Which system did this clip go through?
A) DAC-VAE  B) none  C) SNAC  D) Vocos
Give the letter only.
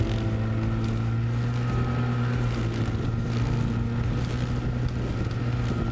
B